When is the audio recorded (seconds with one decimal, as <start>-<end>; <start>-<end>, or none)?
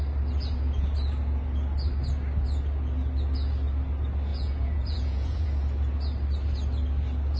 0.0-4.3; 5.5-7.4